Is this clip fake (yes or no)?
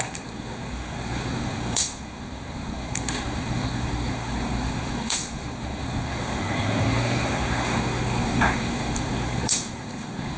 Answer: yes